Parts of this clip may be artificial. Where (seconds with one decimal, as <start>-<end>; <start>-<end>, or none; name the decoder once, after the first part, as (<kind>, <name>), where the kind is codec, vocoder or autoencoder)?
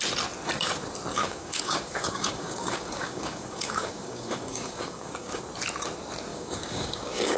1.1-5.4 (codec, DAC); 6.3-7.4